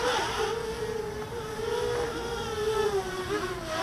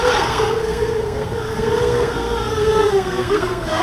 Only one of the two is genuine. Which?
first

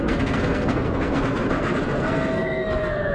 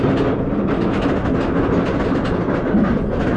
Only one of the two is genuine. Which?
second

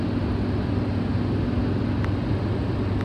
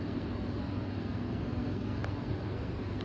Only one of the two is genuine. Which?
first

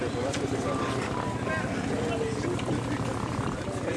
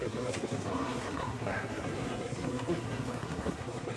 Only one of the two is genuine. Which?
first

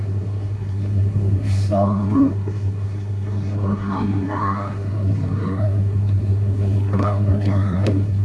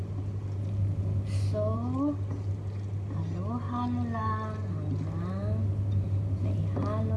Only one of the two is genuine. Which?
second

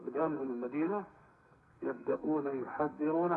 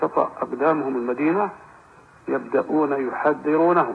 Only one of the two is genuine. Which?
second